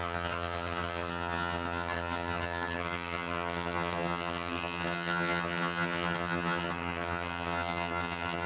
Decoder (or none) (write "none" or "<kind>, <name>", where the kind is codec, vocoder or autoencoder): vocoder, HiFi-GAN